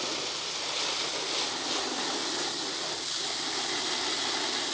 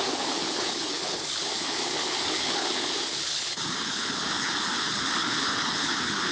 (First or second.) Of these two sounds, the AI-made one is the second